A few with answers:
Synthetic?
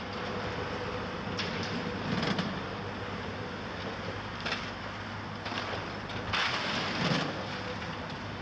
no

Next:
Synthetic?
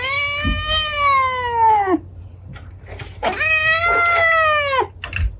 no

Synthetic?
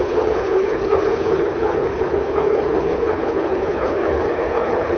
yes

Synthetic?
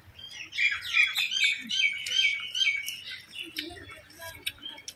no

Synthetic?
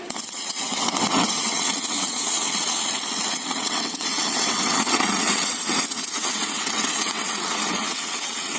yes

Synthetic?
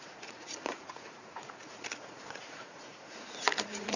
yes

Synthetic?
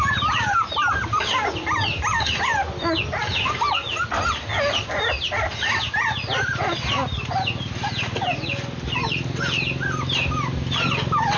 no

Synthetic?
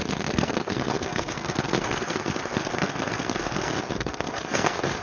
yes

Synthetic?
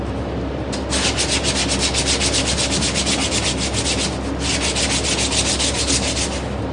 no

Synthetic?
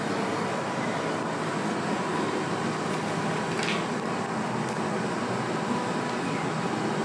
no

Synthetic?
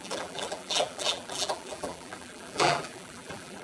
yes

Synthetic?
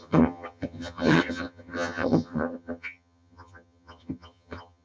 yes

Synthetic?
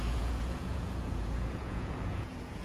yes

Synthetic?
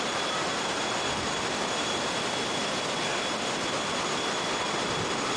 no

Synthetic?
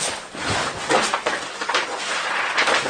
no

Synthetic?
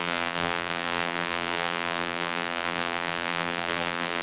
yes